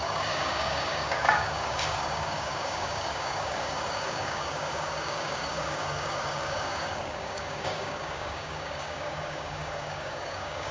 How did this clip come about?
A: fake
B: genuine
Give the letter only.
A